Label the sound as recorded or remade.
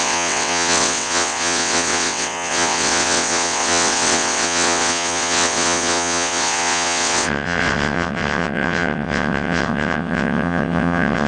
remade